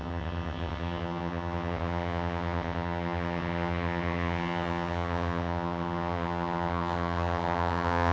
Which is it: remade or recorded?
remade